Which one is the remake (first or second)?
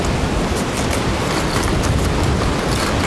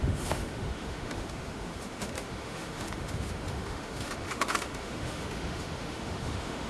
second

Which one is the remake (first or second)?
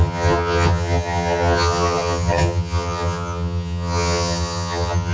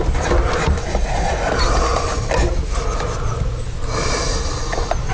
first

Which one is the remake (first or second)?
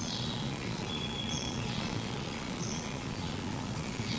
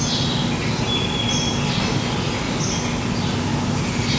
first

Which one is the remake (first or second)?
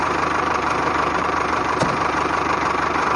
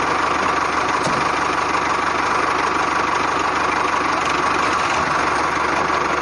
first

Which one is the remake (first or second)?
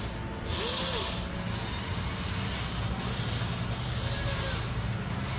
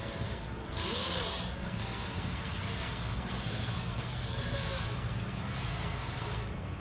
second